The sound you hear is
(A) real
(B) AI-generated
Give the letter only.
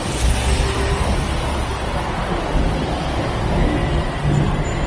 A